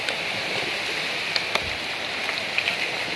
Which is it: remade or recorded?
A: recorded